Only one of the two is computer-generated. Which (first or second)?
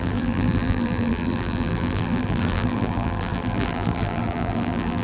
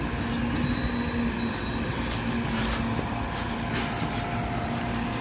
first